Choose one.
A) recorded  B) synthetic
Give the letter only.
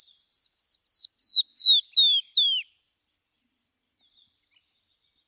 A